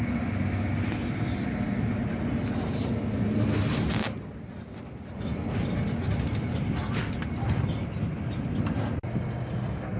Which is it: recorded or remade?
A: recorded